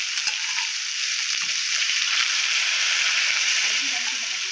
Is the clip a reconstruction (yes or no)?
yes